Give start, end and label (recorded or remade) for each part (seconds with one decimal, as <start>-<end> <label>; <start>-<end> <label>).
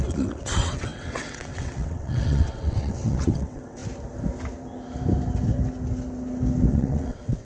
0.0-3.8 remade; 3.8-6.7 recorded; 6.7-7.4 remade